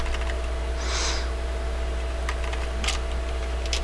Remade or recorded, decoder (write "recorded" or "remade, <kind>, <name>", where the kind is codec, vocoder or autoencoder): recorded